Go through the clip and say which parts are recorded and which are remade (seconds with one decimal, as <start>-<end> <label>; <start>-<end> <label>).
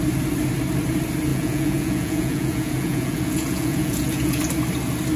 0.0-1.3 recorded; 1.3-4.4 remade; 4.4-5.2 recorded